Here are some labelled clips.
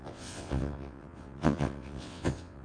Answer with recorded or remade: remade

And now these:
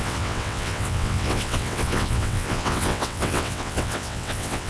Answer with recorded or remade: remade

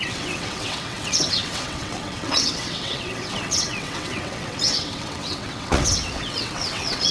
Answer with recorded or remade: remade